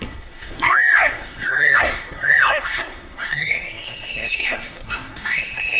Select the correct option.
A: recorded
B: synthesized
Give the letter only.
B